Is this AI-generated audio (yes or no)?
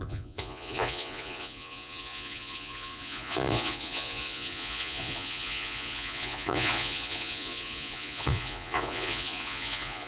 yes